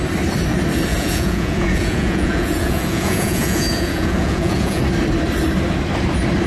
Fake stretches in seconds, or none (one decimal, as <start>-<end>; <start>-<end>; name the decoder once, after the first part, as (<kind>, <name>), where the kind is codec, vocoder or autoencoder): 0.9-4.8 (vocoder, Vocos)